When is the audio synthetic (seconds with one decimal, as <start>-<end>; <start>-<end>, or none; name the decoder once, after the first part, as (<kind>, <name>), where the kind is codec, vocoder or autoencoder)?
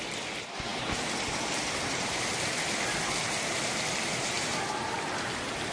0.7-4.1 (vocoder, BigVGAN v2)